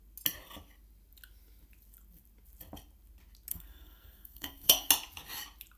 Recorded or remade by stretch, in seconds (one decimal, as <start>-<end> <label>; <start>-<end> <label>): 0.0-3.5 recorded; 3.5-4.9 remade; 4.9-5.8 recorded